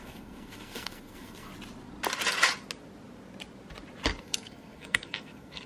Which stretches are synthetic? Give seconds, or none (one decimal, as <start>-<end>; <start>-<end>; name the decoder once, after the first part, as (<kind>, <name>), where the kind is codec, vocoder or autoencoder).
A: 0.0-1.5 (codec, SNAC); 4.2-5.7